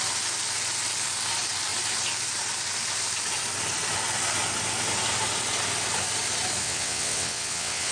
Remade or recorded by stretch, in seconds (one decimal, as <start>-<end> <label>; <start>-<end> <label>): 0.0-6.6 recorded; 6.6-7.9 remade